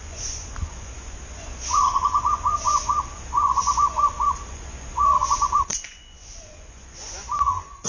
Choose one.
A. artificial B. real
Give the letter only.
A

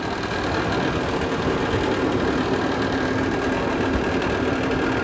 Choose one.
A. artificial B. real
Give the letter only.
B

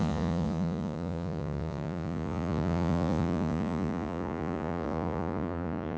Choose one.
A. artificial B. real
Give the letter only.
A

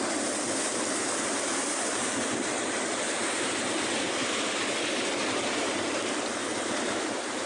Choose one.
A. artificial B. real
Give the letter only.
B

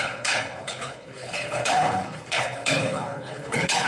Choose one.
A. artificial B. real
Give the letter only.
A